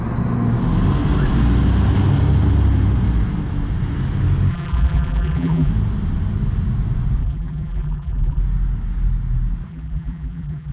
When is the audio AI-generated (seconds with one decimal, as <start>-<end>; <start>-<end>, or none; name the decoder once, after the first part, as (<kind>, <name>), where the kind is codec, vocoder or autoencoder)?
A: 4.5-5.7 (vocoder, BigVGAN v2); 7.2-8.4; 9.7-10.7

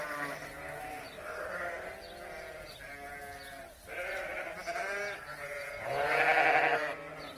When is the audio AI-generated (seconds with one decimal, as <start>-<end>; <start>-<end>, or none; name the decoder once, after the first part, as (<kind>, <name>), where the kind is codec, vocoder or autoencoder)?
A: 5.3-6.2 (vocoder, Vocos)